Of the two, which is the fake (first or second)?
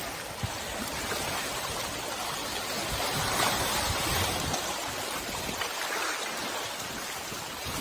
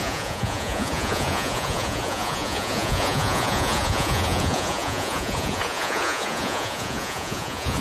second